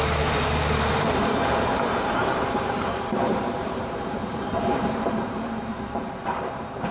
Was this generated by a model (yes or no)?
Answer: yes